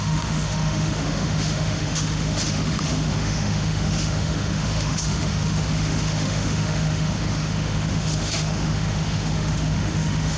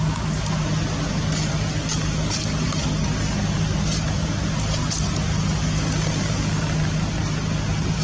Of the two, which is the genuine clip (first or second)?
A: second